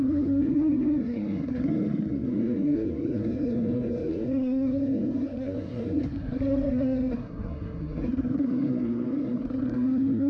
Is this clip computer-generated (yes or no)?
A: yes